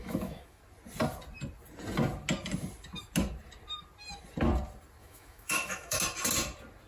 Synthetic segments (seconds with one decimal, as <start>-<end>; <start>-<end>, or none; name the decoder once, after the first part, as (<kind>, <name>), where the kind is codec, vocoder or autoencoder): 0.0-0.6 (autoencoder, DAC-VAE); 5.0-6.0